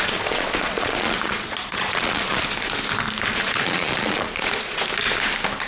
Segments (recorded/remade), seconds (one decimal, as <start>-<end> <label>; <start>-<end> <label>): 0.0-2.4 remade; 2.4-3.3 recorded; 3.3-4.8 remade; 4.8-5.7 recorded